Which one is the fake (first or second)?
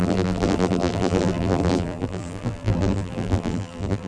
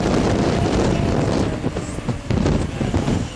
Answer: first